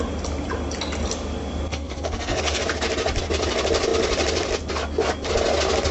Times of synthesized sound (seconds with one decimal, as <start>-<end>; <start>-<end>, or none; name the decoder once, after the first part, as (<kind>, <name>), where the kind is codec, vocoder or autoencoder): 1.7-2.6 (codec, SNAC)